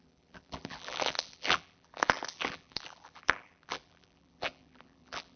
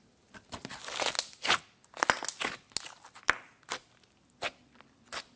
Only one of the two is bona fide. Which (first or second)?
second